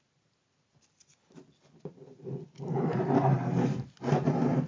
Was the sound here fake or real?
real